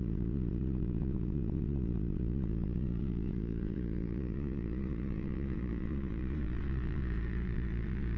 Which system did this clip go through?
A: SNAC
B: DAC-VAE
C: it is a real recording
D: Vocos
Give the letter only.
D